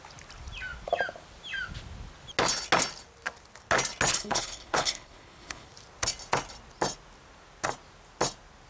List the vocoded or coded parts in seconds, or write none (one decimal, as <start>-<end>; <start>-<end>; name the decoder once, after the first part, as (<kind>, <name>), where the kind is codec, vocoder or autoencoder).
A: 4.1-5.7 (codec, HILCodec)